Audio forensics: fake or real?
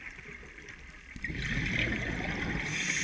real